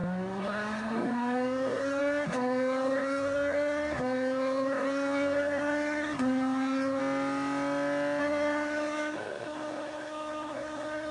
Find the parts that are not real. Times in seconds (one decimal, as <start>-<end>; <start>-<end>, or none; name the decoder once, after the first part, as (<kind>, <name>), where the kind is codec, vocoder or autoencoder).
0.0-7.0 (codec, SNAC); 8.2-11.1